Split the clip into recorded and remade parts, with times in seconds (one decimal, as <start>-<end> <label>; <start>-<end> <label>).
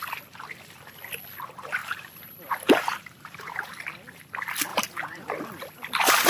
0.0-1.8 recorded; 1.8-3.7 remade; 3.7-4.7 recorded; 4.7-5.3 remade; 5.3-6.3 recorded